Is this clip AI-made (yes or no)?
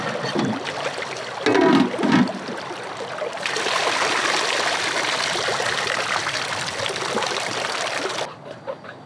no